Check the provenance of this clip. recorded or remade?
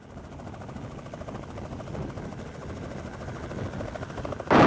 recorded